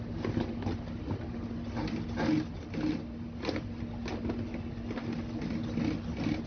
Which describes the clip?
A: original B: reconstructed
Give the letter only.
A